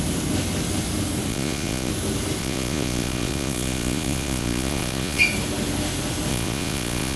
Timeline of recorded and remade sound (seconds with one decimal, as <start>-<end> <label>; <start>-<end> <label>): 0.0-1.3 recorded; 1.3-1.9 remade; 1.9-2.4 recorded; 2.4-5.2 remade; 5.2-6.3 recorded; 6.3-7.2 remade